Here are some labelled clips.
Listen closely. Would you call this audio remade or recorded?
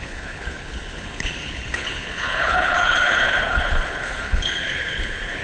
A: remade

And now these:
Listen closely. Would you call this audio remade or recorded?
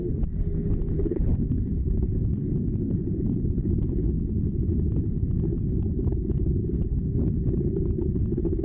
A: remade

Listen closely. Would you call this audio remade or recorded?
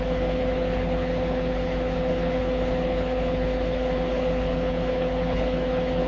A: remade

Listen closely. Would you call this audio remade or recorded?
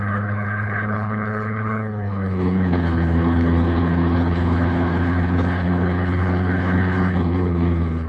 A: remade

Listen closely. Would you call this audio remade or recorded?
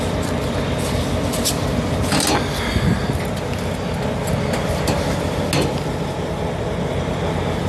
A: recorded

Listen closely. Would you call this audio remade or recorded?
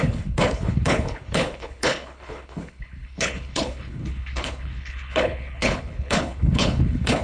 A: remade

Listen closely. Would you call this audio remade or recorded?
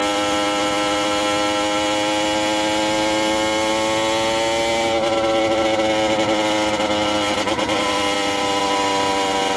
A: recorded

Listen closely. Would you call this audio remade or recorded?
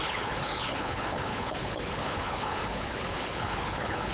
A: remade